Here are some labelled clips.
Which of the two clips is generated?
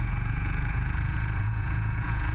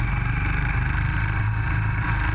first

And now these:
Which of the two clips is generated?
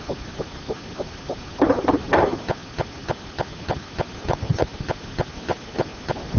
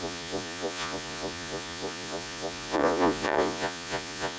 second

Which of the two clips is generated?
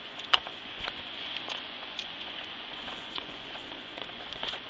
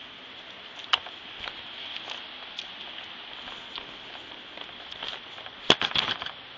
first